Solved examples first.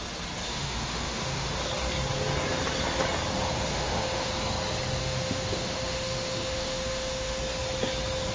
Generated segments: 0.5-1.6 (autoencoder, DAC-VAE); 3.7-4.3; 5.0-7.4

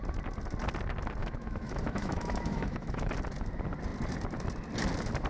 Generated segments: 1.2-3.1 (autoencoder, DAC-VAE)

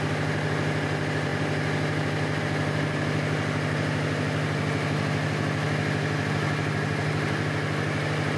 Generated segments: none

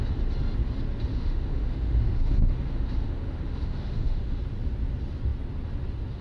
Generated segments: 1.1-4.4 (autoencoder, DAC-VAE)